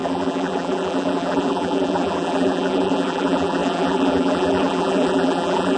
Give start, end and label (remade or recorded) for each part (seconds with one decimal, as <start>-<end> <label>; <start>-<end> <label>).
0.0-5.8 remade